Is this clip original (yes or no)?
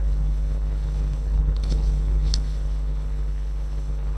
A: no